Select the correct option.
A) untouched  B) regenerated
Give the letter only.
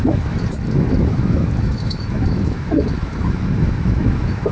B